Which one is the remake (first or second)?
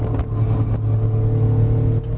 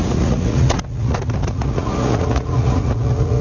second